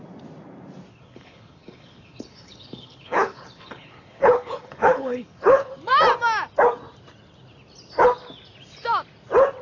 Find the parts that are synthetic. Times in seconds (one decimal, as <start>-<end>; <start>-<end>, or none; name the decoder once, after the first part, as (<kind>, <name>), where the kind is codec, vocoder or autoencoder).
0.9-5.7 (codec, HILCodec)

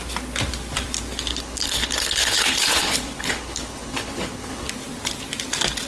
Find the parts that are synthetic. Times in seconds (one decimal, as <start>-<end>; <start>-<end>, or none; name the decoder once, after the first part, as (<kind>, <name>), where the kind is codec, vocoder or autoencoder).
1.3-4.7 (codec, HILCodec)